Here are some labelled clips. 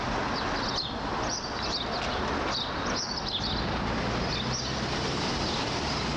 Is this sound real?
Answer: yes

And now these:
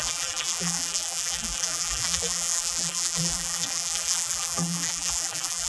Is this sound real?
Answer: no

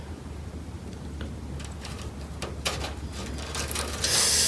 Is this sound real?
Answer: yes